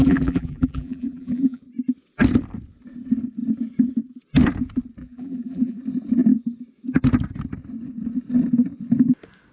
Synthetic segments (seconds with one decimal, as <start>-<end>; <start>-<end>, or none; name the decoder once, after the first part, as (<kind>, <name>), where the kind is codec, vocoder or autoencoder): 0.0-1.6 (vocoder, BigVGAN v2); 5.0-5.8